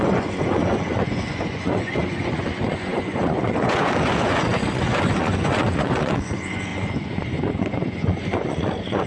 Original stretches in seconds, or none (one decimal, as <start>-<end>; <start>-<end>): none